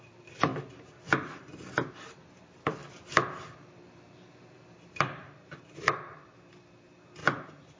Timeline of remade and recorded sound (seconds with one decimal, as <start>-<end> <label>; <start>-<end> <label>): 0.0-7.2 remade; 7.2-7.8 recorded